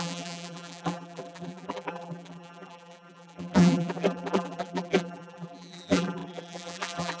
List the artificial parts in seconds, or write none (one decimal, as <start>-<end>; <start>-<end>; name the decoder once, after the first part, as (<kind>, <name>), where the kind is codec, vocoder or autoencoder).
0.0-7.2 (vocoder, BigVGAN v2)